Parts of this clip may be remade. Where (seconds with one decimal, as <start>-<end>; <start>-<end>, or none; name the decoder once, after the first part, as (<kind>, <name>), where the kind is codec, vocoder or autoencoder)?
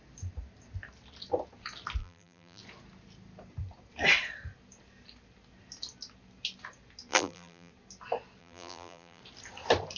2.0-2.6 (vocoder, BigVGAN v2); 7.1-7.7; 8.4-9.2